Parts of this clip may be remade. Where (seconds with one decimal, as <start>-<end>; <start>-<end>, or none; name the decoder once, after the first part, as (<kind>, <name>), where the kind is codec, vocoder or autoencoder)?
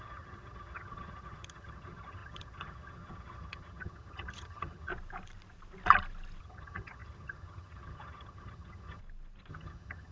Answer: 0.0-4.9 (vocoder, HiFi-GAN); 6.4-9.0; 9.5-10.1